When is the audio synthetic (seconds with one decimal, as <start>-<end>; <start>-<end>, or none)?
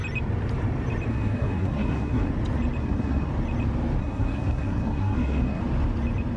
1.1-2.3; 2.8-3.3; 4.0-5.6